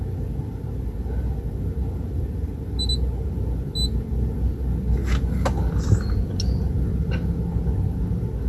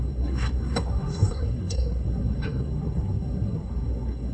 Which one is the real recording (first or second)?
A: first